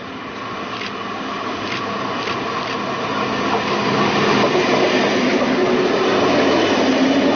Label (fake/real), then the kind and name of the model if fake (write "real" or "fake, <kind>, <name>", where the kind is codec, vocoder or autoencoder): real